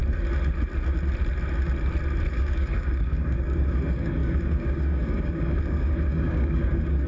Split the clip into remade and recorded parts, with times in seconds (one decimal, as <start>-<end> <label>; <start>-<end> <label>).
0.0-2.3 recorded; 2.3-7.1 remade